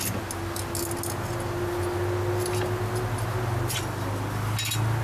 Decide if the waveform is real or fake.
real